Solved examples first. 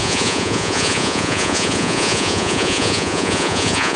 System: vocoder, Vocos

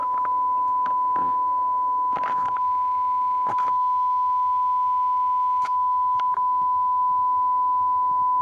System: autoencoder, DAC-VAE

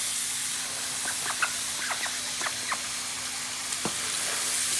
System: none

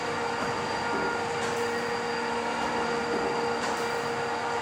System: none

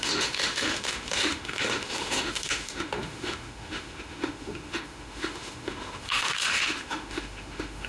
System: autoencoder, DAC-VAE